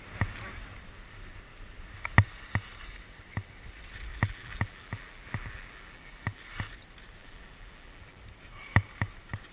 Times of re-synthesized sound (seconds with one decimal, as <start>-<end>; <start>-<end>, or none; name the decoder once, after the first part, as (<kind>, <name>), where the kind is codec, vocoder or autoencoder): 4.1-6.4 (vocoder, BigVGAN v2); 7.2-8.2